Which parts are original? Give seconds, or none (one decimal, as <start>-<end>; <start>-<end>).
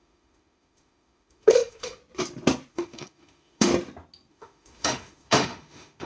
2.0-2.7; 3.7-4.3